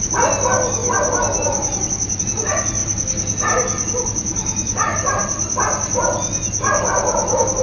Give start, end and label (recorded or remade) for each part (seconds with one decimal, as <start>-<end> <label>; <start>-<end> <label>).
0.0-7.6 recorded